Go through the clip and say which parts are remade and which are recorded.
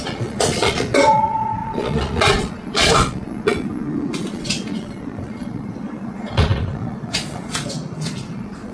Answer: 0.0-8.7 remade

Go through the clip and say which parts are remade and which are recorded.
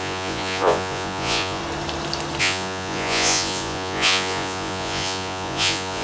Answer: 0.0-1.6 remade; 1.6-2.4 recorded; 2.4-6.0 remade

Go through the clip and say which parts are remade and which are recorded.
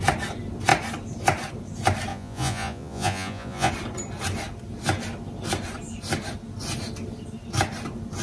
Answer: 0.0-2.1 recorded; 2.1-3.7 remade; 3.7-8.2 recorded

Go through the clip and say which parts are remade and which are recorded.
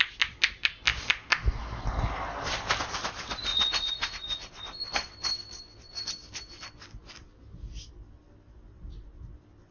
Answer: 0.0-3.5 recorded; 3.5-4.5 remade; 4.5-9.7 recorded